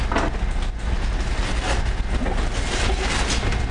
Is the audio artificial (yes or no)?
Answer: no